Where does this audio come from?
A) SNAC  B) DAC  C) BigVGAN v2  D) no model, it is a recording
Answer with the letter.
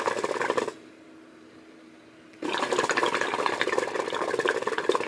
D